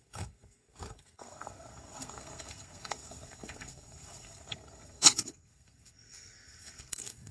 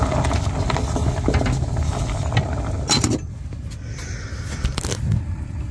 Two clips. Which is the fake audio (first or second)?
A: first